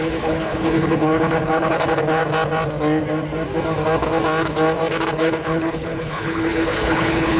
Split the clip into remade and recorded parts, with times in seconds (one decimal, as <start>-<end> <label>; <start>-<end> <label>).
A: 0.0-2.2 remade; 2.2-5.1 recorded; 5.1-7.4 remade